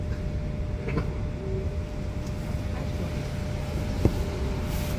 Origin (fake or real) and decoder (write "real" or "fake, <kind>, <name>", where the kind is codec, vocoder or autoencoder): real